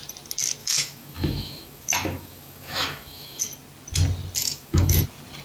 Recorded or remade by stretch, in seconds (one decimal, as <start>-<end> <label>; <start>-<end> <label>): 0.0-0.6 recorded; 0.6-3.4 remade; 3.4-4.4 recorded; 4.4-5.0 remade; 5.0-5.4 recorded